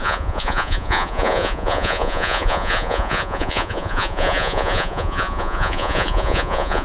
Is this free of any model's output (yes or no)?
no